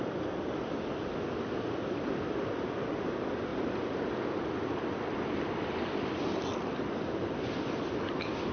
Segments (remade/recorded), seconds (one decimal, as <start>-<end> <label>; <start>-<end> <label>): 0.0-3.5 recorded; 3.5-4.1 remade; 4.1-8.5 recorded